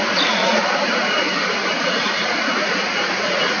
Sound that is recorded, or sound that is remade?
remade